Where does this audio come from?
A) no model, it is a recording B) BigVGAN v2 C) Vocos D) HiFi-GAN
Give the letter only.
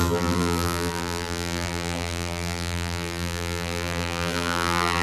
B